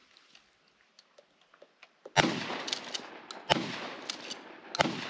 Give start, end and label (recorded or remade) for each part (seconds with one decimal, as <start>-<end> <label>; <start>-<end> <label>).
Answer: 0.0-5.1 recorded